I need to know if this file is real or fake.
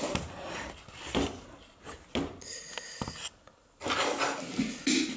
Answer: real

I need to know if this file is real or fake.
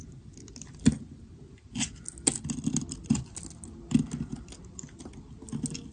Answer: real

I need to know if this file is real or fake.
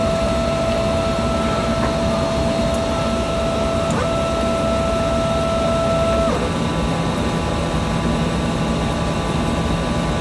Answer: real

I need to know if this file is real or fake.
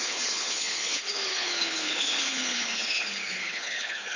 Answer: fake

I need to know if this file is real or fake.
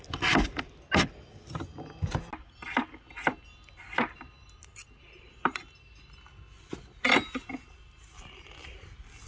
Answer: real